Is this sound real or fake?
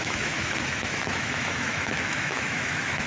fake